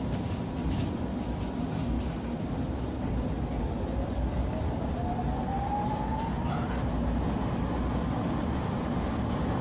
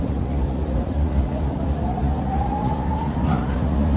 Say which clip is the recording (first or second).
first